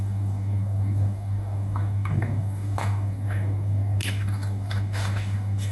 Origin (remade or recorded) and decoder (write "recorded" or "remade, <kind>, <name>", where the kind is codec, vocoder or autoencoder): remade, codec, DAC